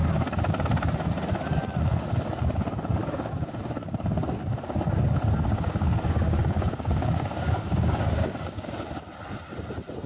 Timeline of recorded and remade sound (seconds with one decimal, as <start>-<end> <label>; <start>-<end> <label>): 0.0-0.5 remade; 0.5-3.0 recorded; 3.0-3.6 remade; 3.6-5.5 recorded; 5.5-8.7 remade; 8.7-10.1 recorded